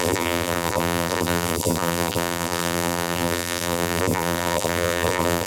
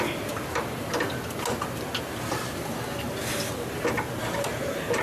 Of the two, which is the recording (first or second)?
second